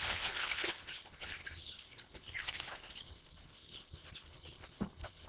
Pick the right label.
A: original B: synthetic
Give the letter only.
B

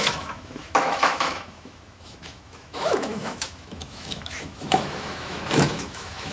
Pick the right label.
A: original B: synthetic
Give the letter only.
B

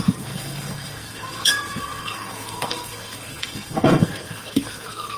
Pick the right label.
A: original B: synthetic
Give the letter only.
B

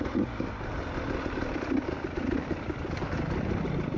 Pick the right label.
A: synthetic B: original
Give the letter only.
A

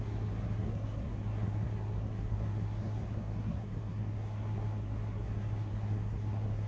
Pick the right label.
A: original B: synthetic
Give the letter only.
B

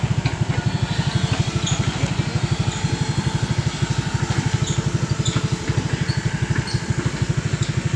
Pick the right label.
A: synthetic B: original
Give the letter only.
B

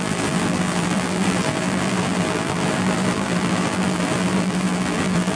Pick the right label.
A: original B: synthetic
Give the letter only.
B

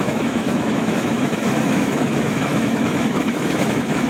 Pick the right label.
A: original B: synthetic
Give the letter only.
B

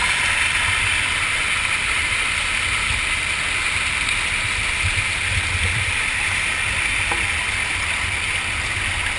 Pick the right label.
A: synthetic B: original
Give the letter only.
B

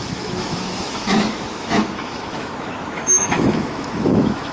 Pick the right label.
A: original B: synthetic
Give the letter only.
B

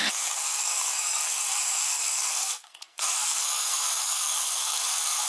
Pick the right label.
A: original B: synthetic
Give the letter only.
B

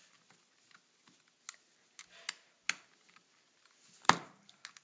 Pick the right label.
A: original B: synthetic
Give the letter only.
A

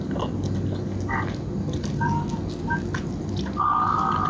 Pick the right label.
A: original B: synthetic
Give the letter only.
A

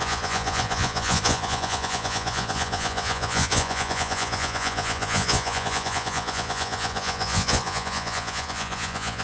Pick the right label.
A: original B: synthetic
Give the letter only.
B